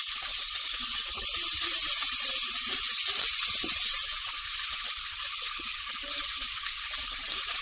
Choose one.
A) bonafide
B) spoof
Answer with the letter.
B